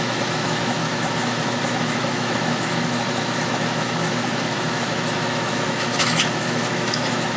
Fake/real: fake